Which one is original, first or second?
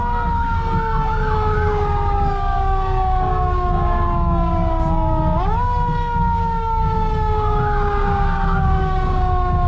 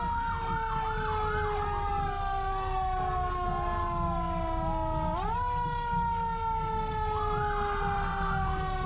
second